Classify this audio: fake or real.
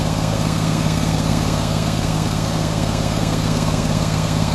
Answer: fake